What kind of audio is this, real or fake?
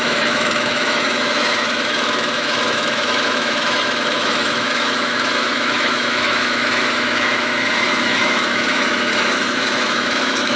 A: fake